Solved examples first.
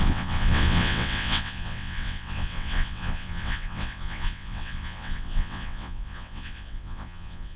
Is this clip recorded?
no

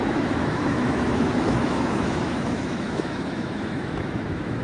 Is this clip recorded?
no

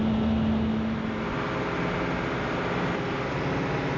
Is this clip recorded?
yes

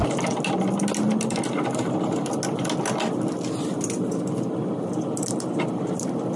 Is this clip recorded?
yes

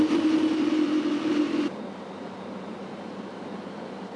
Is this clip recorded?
no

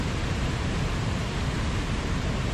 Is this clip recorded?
no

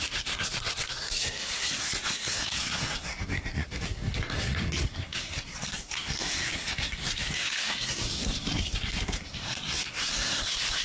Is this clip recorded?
no